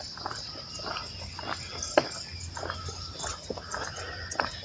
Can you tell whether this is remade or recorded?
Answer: recorded